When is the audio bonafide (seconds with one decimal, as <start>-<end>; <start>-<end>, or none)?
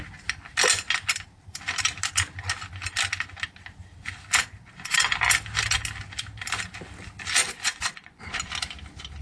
0.0-7.4; 8.2-9.2